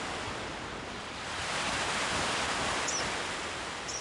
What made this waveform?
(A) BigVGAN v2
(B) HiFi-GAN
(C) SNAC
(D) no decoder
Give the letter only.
D